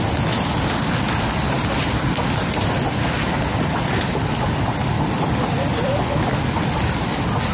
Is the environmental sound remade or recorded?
recorded